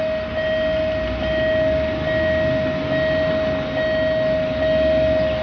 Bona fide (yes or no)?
yes